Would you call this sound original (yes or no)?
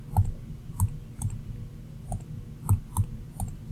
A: yes